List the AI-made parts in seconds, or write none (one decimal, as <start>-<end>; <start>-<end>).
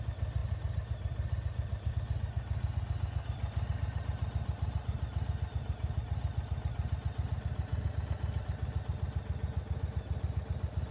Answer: none